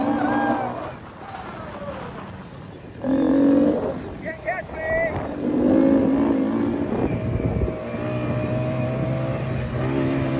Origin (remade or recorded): recorded